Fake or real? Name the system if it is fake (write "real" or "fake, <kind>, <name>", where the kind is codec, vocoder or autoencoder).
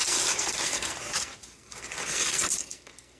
fake, codec, SNAC